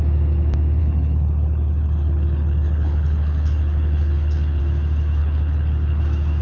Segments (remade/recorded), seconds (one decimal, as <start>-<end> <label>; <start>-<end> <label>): 0.0-0.8 recorded; 0.8-4.6 remade; 4.6-5.2 recorded; 5.2-6.0 remade; 6.0-6.4 recorded